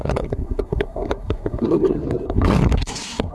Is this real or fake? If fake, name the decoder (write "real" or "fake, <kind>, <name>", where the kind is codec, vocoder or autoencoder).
fake, codec, SNAC